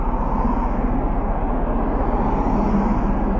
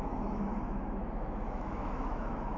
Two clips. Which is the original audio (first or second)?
first